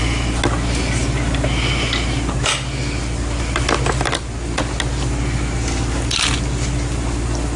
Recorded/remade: recorded